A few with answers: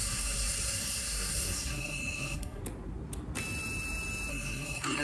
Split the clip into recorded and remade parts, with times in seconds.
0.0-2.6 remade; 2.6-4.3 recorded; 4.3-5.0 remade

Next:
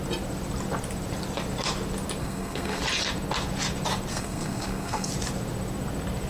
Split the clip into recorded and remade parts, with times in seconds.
0.0-2.2 recorded; 2.2-2.8 remade; 2.8-4.1 recorded; 4.1-5.1 remade; 5.1-6.3 recorded

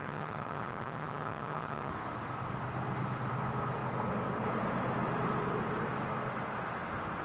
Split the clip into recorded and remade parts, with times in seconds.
0.0-1.9 remade; 1.9-7.2 recorded